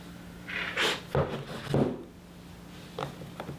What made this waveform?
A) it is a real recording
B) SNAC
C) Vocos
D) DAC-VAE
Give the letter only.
A